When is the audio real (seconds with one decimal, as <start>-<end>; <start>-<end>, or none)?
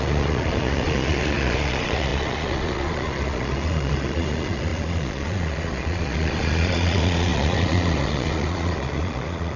none